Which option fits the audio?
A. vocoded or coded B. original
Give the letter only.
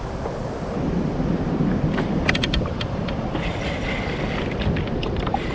B